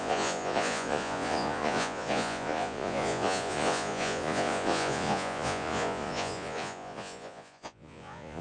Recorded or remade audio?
remade